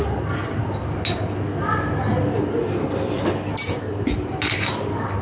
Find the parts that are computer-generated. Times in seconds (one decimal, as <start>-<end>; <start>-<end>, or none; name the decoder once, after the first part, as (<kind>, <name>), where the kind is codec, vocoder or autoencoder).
none